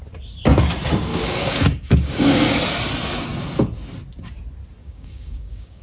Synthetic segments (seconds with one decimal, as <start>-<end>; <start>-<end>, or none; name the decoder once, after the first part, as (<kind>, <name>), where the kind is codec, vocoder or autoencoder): 1.1-2.5 (codec, DAC); 4.8-5.8